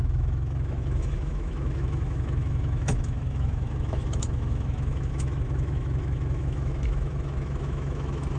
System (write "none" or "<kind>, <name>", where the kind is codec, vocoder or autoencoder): autoencoder, DAC-VAE